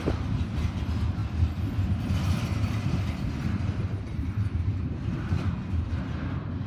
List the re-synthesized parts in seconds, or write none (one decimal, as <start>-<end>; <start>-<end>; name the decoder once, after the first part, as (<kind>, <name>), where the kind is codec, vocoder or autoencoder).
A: none